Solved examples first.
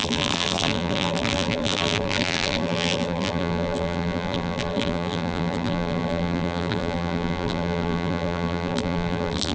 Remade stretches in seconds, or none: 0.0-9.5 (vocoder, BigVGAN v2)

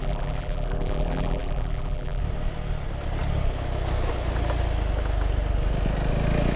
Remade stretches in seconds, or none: 0.0-2.2 (vocoder, BigVGAN v2)

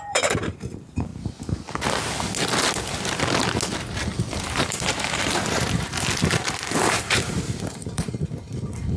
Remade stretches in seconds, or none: 0.0-1.1 (vocoder, BigVGAN v2); 4.4-9.0